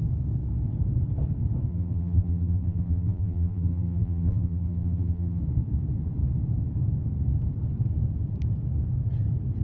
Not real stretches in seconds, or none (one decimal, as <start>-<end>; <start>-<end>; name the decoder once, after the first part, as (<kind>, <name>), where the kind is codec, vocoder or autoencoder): 1.7-5.4 (vocoder, BigVGAN v2)